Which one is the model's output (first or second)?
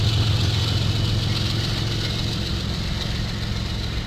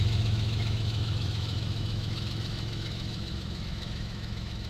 second